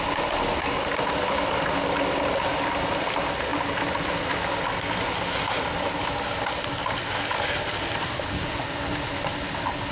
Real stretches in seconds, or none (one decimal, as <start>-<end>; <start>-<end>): 0.0-9.9